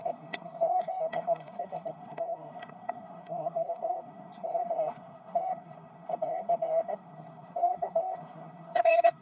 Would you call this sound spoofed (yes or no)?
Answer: yes